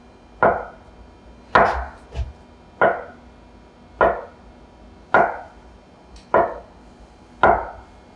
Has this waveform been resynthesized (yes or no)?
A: no